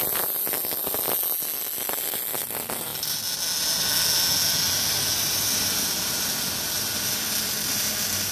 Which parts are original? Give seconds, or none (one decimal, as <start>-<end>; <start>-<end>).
0.0-8.3